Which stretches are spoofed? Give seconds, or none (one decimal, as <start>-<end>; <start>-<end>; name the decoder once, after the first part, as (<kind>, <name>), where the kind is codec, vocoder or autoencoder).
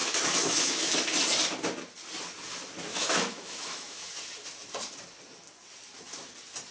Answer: 0.0-0.9 (autoencoder, DAC-VAE); 2.9-4.1